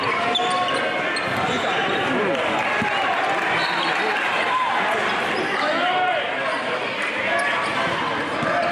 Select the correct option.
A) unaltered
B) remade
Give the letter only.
A